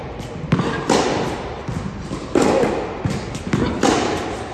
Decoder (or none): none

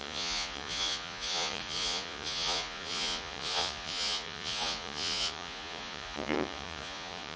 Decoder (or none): vocoder, Vocos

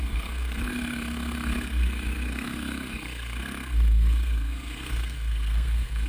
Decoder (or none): codec, SNAC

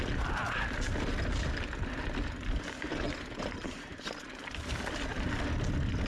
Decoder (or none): none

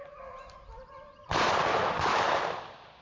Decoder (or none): none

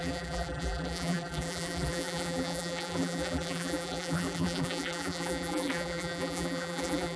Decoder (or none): vocoder, BigVGAN v2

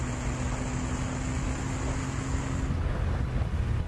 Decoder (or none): none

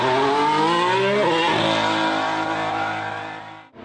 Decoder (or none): none